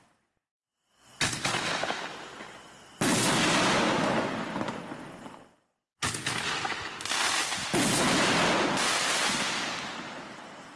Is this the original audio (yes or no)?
yes